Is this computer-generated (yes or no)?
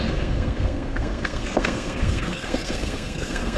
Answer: yes